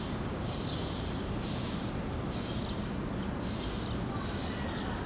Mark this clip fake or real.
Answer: real